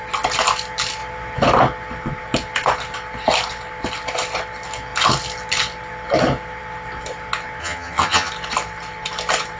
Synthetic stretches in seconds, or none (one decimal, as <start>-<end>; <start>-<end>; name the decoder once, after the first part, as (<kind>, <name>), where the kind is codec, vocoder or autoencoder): 7.6-8.3 (vocoder, HiFi-GAN)